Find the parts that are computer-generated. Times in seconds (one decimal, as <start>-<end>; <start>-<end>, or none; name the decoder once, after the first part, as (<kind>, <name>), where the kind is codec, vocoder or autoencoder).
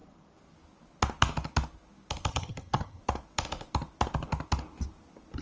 2.3-3.0 (vocoder, HiFi-GAN)